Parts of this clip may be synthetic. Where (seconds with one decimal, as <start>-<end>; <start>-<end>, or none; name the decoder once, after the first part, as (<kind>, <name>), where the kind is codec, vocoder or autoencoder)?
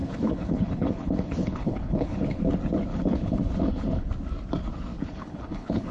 0.0-2.4 (codec, HILCodec); 2.9-4.1; 4.9-5.9